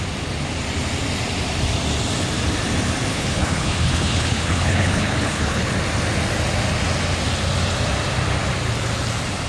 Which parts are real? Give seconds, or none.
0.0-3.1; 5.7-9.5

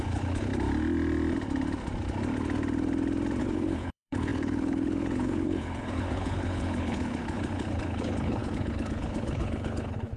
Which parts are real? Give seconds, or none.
0.5-3.4

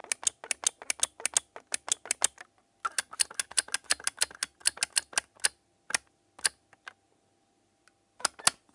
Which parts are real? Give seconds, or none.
0.0-8.7

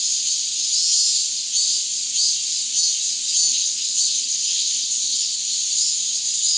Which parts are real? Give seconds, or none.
0.0-3.5; 5.4-6.6